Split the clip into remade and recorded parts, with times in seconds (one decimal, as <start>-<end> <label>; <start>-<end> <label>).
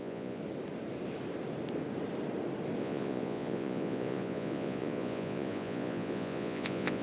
0.0-0.4 remade; 0.4-2.8 recorded; 2.8-7.0 remade